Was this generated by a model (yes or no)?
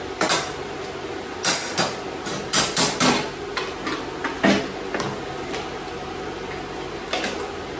no